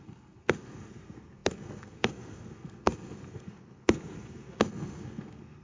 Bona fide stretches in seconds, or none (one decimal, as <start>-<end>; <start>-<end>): none